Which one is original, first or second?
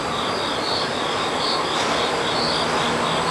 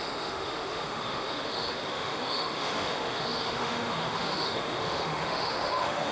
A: first